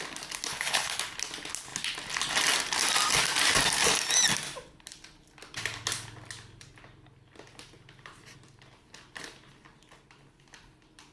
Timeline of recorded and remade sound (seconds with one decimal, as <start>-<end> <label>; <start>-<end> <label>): 0.0-0.5 recorded; 0.5-1.0 remade; 1.0-11.1 recorded